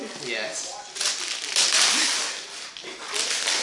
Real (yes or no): yes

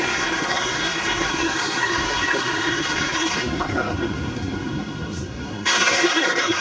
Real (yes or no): no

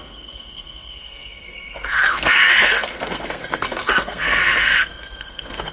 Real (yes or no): no